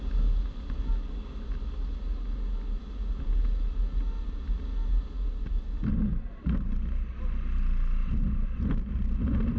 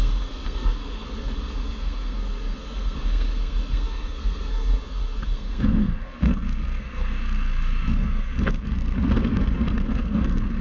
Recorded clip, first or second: first